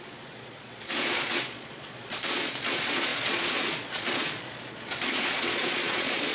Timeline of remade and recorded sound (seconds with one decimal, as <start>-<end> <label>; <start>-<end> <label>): 0.0-6.3 remade